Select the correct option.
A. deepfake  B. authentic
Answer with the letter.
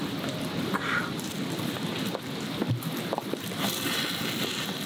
A